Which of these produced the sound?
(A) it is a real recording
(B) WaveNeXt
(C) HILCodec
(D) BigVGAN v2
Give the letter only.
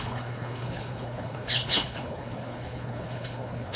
C